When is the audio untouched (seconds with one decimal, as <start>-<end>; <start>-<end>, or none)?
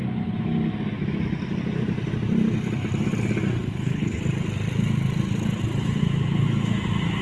0.0-3.6; 4.2-7.2